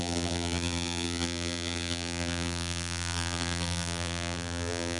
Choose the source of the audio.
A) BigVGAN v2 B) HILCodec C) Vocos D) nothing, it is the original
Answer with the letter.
A